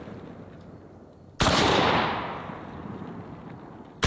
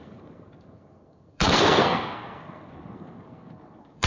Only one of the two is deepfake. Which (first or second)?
second